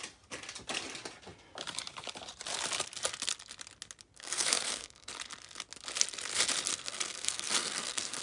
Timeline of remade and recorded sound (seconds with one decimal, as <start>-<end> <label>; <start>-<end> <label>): 0.0-4.1 recorded; 4.1-5.1 remade; 5.1-6.7 recorded; 6.7-8.2 remade